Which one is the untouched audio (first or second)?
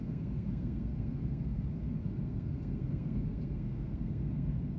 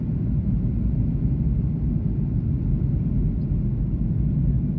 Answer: second